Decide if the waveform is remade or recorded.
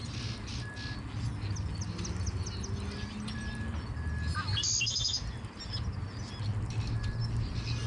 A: recorded